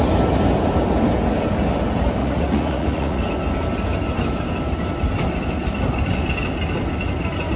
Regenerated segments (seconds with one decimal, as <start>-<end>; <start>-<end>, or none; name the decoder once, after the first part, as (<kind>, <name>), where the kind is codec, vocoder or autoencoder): 2.2-3.2 (vocoder, Vocos)